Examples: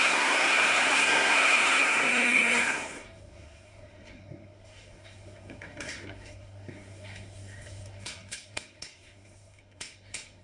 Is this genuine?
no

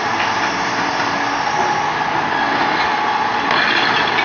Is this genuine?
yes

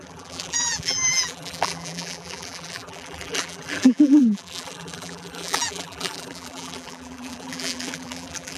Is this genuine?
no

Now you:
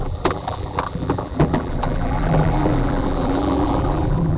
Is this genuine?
no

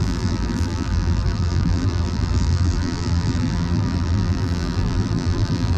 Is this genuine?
no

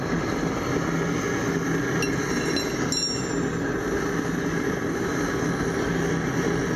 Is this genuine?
yes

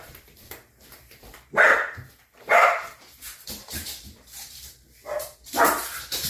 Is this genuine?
no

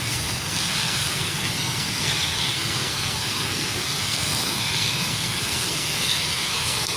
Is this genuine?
no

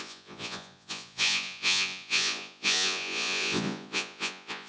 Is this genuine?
no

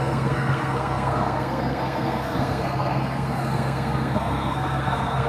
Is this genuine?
no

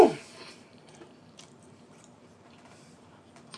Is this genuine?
no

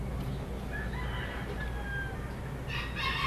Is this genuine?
yes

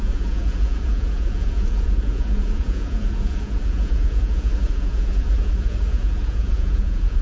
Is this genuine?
no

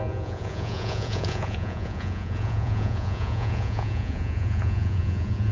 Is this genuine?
no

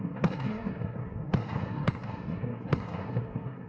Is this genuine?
no